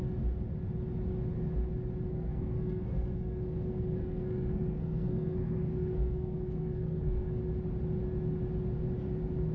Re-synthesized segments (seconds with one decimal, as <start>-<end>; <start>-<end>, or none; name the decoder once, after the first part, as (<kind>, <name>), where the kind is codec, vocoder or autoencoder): 2.1-7.4 (codec, SNAC)